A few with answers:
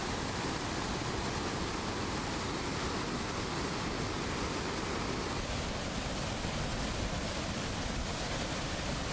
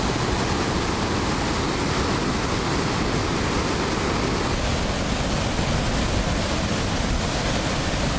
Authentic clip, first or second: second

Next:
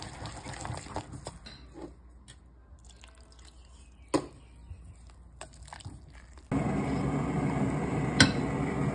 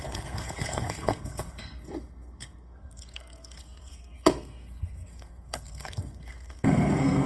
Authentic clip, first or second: first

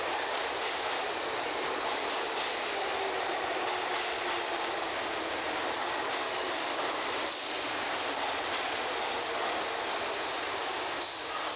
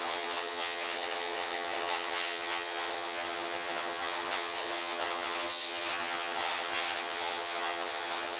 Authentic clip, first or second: first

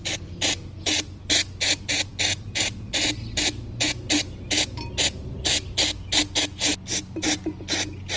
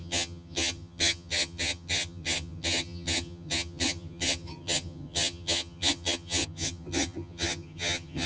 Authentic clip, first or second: first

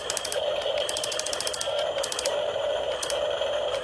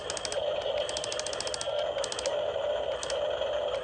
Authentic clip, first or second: second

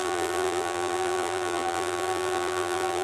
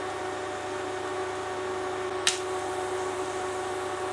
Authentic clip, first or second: second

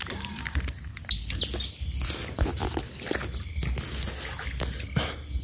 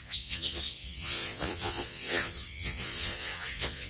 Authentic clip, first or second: first